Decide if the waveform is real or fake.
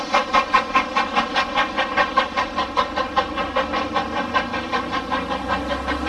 real